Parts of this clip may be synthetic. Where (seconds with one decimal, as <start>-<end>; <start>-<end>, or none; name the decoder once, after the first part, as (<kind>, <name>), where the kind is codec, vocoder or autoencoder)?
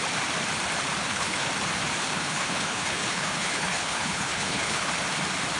1.0-1.5 (codec, HILCodec); 2.0-4.9